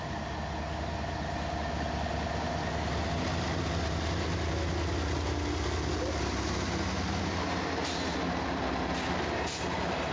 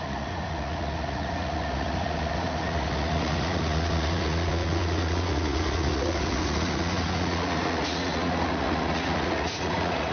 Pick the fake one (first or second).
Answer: second